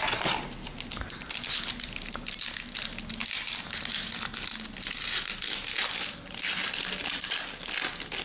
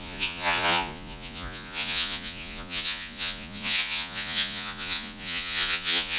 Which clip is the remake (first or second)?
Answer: second